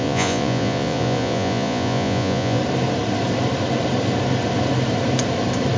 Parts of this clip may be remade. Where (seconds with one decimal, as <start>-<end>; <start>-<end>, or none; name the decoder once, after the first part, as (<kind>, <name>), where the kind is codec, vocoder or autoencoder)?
0.0-2.6 (vocoder, Vocos)